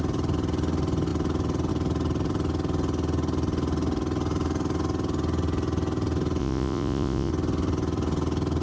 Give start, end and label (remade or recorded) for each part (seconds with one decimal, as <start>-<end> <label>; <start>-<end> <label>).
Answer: 0.0-6.4 recorded; 6.4-7.3 remade; 7.3-8.6 recorded